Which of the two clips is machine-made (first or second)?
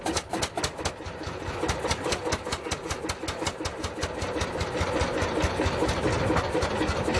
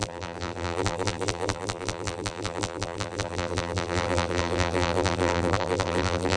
second